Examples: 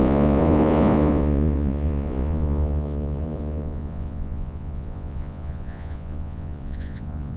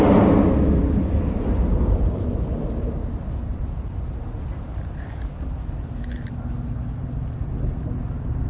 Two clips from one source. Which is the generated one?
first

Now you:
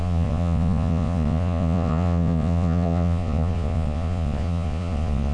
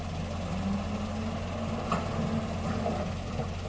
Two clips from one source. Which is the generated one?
first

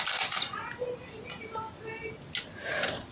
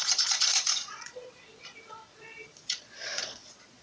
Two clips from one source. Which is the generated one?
second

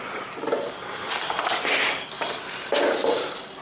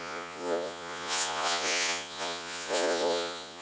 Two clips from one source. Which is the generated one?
second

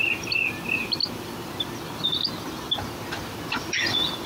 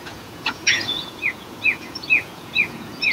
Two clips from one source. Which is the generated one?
second